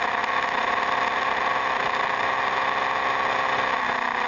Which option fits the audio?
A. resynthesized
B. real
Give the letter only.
B